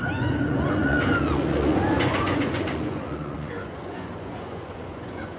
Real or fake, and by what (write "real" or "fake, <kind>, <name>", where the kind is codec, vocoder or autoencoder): fake, vocoder, Vocos